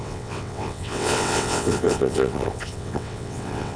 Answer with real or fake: fake